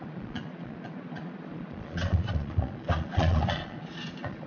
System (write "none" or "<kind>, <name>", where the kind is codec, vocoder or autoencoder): vocoder, Vocos